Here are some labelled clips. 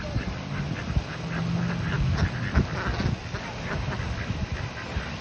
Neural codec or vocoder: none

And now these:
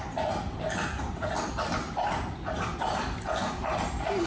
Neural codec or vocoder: none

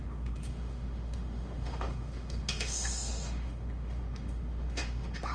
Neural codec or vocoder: autoencoder, DAC-VAE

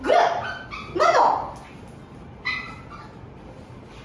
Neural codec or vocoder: none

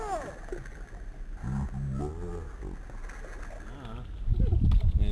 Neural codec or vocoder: none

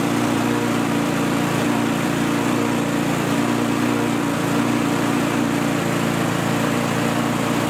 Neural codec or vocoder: vocoder, BigVGAN v2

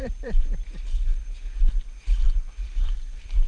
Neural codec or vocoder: vocoder, BigVGAN v2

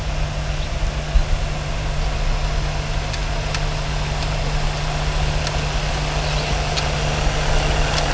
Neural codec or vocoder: none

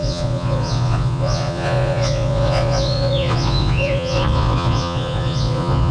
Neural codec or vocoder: vocoder, Vocos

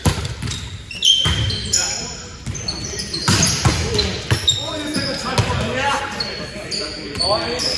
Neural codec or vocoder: none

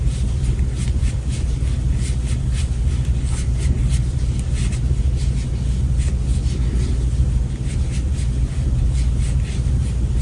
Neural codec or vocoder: none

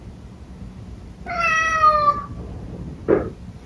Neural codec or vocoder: none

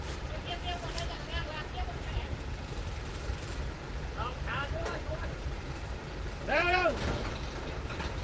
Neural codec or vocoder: vocoder, BigVGAN v2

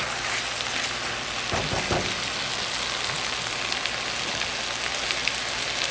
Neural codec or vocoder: none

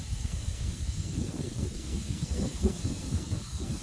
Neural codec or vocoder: codec, SNAC